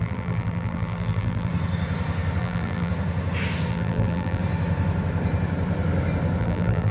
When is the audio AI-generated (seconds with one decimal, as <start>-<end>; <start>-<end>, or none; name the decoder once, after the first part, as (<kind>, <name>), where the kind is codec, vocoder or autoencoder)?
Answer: 0.0-1.5 (vocoder, BigVGAN v2); 2.4-2.9; 3.7-4.4; 6.4-6.9